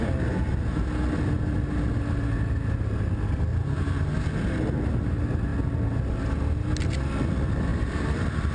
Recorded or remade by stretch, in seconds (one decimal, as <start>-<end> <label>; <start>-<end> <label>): 0.0-3.5 recorded; 3.5-4.2 remade; 4.2-5.5 recorded; 5.5-6.7 remade; 6.7-7.7 recorded; 7.7-8.5 remade